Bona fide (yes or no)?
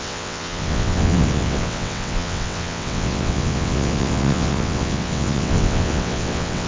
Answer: no